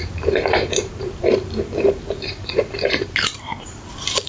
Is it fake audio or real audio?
fake